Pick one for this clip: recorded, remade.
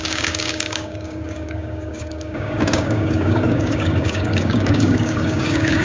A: remade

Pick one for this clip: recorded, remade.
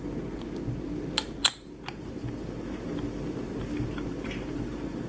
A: recorded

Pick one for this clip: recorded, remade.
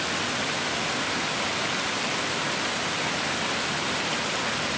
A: recorded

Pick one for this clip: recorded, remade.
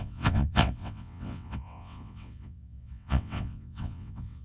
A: remade